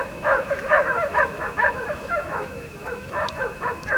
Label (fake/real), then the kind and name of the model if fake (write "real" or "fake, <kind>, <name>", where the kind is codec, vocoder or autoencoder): fake, autoencoder, DAC-VAE